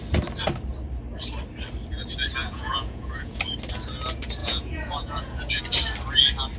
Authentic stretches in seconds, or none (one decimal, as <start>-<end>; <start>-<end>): 0.0-2.4; 3.4-4.4; 5.6-6.6